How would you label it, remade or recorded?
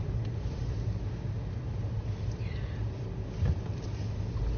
recorded